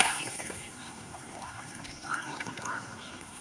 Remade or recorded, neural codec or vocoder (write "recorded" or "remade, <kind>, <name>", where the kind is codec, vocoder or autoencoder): remade, codec, SNAC